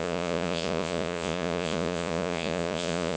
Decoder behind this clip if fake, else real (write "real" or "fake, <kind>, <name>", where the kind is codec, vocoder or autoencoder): fake, vocoder, Vocos